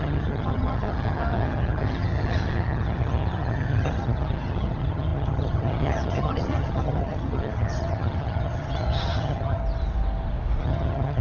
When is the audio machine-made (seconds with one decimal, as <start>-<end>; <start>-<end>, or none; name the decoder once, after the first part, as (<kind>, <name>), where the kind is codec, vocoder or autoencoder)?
0.0-9.6 (vocoder, HiFi-GAN); 10.6-11.2